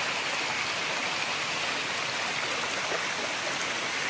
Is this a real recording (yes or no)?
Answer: yes